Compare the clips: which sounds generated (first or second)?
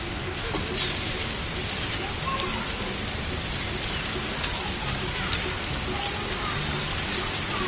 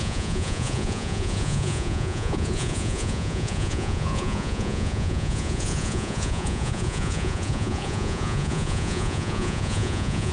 second